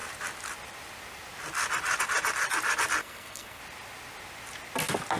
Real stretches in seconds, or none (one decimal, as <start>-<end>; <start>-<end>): 0.0-3.0; 3.6-5.2